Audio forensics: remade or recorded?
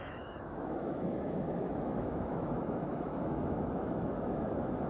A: remade